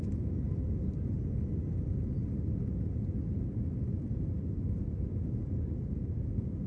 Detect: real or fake real